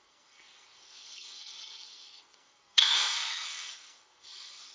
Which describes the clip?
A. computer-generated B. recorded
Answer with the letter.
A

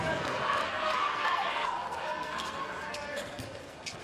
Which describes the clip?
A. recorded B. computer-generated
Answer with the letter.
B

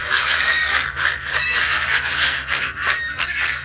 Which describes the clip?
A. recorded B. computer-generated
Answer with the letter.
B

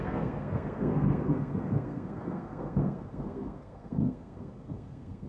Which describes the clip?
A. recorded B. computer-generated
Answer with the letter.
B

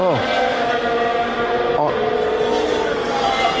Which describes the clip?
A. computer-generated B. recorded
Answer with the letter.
B